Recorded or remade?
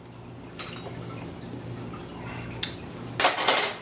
recorded